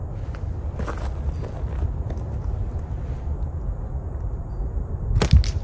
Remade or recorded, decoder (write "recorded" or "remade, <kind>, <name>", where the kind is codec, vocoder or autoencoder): recorded